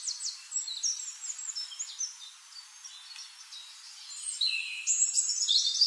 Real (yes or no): yes